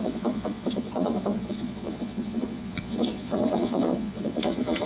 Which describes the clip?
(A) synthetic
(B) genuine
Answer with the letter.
A